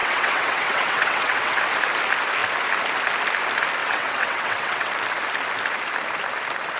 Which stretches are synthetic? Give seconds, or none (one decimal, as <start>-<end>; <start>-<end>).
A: 0.0-1.6; 3.8-4.9